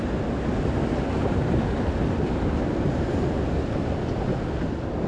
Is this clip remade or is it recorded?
recorded